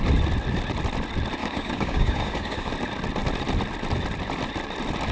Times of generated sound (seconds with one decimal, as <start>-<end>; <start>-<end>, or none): 1.4-2.7